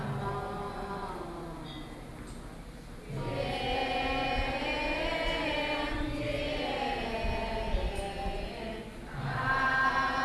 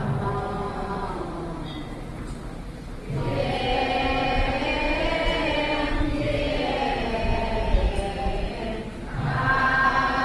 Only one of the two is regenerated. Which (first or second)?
second